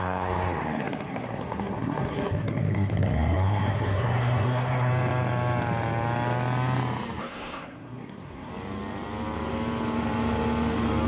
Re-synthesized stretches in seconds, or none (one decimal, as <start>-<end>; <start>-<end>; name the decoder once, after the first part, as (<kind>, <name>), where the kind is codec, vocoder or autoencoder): 0.0-4.9 (codec, SNAC); 7.2-8.5